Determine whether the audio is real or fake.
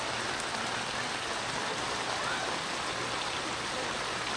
real